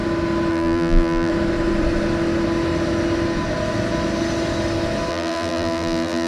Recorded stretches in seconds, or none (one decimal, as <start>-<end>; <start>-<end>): 0.0-0.5; 1.3-5.1